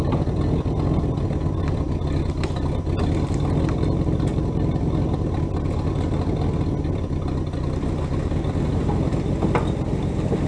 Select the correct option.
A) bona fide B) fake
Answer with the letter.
A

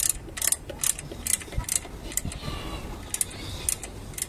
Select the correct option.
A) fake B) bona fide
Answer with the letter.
B